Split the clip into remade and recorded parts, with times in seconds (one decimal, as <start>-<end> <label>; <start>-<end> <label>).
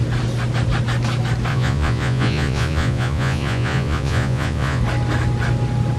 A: 0.0-1.5 recorded; 1.5-4.8 remade; 4.8-6.0 recorded